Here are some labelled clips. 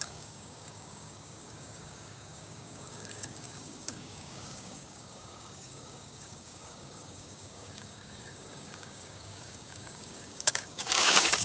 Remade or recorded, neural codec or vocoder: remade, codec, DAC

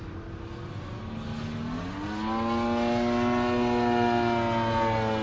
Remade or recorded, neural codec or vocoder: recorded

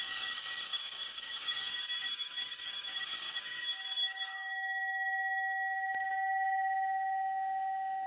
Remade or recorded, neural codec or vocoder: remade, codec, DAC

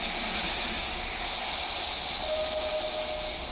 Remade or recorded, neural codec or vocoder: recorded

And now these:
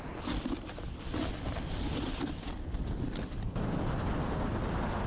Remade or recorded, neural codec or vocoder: recorded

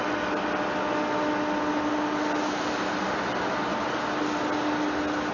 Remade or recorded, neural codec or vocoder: recorded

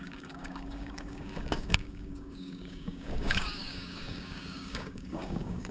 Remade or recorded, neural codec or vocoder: remade, codec, DAC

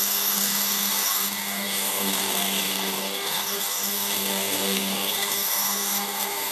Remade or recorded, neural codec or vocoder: remade, codec, DAC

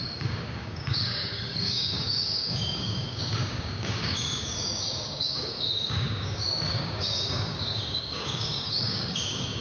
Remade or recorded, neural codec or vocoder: remade, codec, DAC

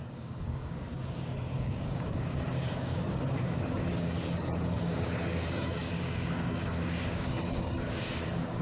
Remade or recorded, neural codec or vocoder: remade, codec, DAC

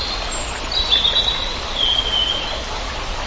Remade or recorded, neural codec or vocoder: recorded